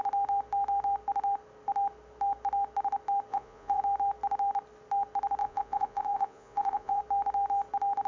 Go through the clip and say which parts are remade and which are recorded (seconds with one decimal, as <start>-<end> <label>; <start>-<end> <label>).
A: 0.0-3.3 recorded; 3.3-3.8 remade; 3.8-5.4 recorded; 5.4-7.0 remade; 7.0-8.1 recorded